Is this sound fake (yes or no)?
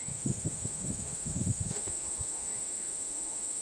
yes